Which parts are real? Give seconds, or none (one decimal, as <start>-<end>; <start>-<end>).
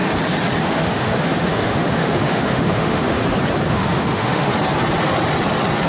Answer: 0.0-0.6; 3.2-3.7; 4.5-5.9